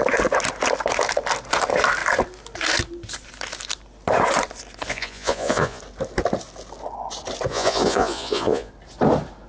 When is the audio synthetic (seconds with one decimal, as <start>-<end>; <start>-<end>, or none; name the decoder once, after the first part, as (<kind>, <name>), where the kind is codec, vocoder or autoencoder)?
4.9-5.8 (vocoder, Vocos); 7.5-8.7